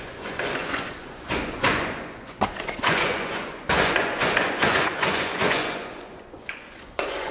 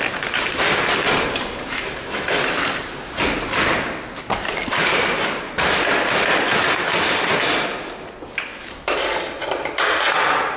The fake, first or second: first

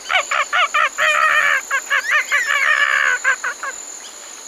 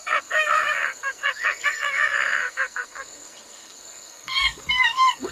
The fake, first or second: second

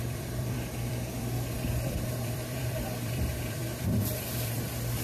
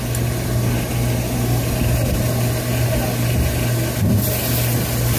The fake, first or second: first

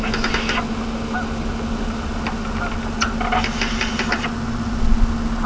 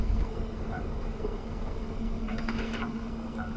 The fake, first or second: second